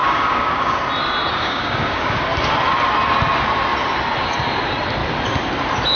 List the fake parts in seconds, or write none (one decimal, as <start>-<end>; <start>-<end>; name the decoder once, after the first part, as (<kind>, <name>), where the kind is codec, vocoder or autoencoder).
0.0-0.8 (codec, DAC); 1.3-2.2

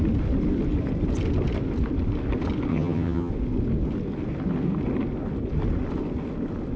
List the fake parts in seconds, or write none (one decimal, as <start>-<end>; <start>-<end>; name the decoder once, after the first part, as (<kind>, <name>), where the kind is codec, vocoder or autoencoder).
2.7-3.3 (vocoder, HiFi-GAN)